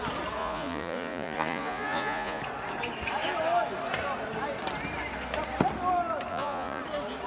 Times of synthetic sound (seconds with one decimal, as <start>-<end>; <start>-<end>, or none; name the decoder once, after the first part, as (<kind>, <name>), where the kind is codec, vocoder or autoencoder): 0.4-2.4 (vocoder, Vocos); 6.3-6.8